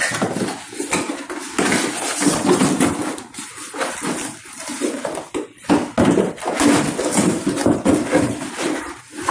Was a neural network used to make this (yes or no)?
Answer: no